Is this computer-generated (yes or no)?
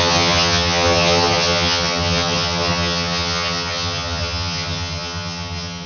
yes